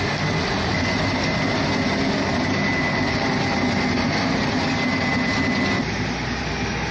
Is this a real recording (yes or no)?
yes